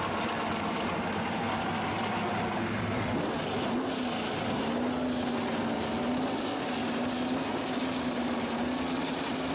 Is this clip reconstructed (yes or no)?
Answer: no